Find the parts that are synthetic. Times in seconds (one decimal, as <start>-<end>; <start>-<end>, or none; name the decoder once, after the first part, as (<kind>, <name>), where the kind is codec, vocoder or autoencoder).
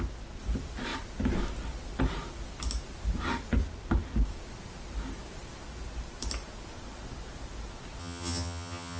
8.0-9.0 (vocoder, HiFi-GAN)